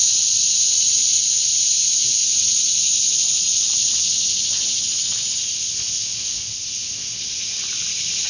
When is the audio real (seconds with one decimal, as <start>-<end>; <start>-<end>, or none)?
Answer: 0.0-5.4; 7.2-8.3